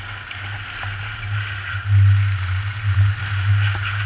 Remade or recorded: recorded